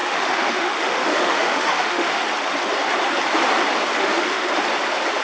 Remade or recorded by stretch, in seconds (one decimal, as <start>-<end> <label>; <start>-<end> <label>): 0.0-2.2 remade; 2.2-4.0 recorded; 4.0-4.5 remade; 4.5-5.2 recorded